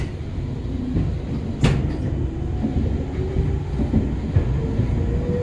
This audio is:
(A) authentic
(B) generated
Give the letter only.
A